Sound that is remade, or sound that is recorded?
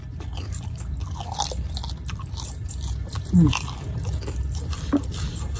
remade